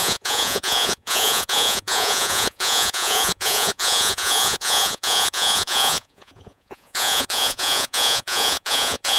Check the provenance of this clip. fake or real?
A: fake